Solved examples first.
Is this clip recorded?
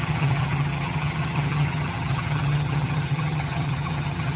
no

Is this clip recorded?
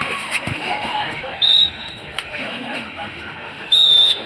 no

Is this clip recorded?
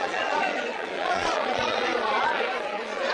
no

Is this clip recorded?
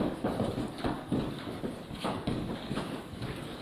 no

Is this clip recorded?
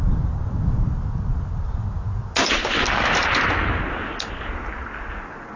yes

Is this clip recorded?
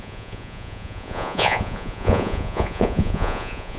no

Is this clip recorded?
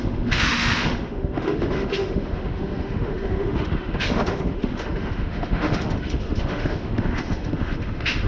no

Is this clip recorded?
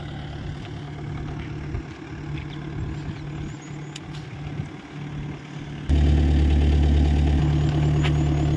yes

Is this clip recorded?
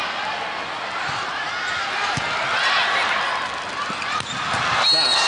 yes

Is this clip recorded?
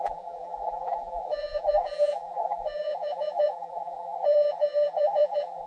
no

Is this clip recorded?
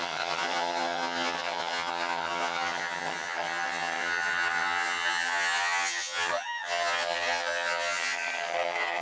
no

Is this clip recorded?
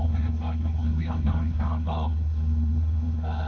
no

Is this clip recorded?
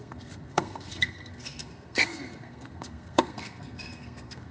no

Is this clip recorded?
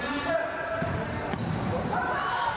no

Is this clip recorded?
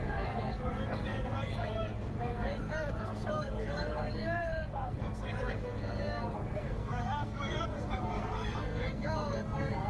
no